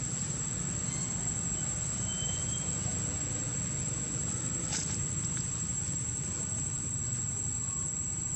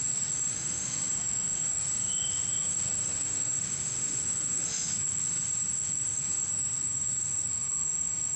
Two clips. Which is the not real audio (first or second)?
second